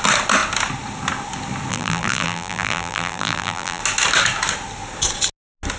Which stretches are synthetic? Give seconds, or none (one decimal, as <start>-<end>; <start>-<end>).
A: 1.7-3.8